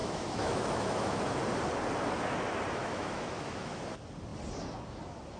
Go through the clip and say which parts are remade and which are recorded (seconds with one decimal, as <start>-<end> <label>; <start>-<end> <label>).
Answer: 0.0-1.4 remade; 1.4-2.8 recorded; 2.8-3.8 remade; 3.8-5.4 recorded